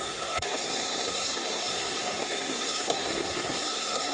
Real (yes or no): no